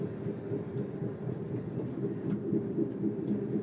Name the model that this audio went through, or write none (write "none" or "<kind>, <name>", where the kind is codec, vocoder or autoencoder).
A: vocoder, BigVGAN v2